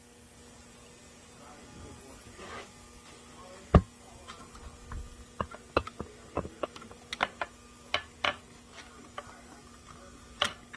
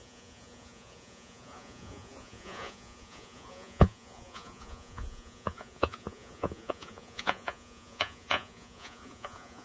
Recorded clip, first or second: first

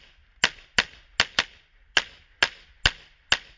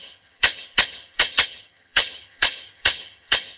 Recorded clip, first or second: first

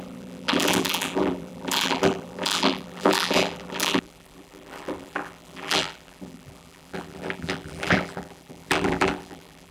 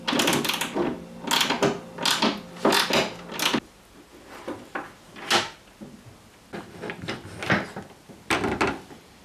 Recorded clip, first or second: second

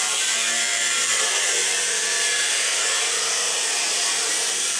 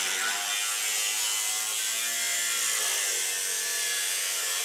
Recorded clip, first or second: second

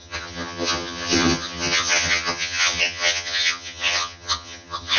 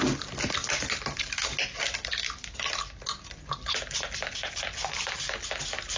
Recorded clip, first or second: second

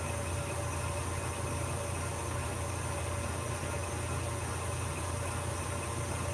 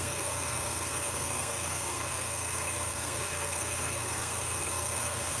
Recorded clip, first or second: first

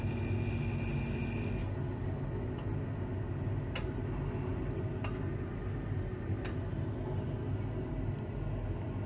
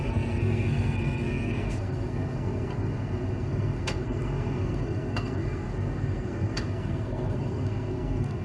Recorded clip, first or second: first